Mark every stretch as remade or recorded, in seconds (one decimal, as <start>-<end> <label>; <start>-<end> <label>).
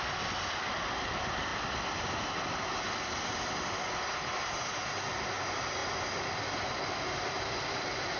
0.0-8.2 recorded